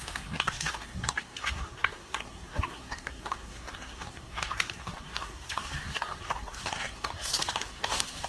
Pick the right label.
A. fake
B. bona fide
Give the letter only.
A